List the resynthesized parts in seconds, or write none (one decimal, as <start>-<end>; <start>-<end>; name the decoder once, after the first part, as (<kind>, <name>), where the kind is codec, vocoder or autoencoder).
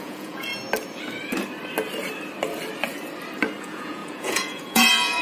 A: 0.0-0.5 (vocoder, Vocos); 3.6-5.2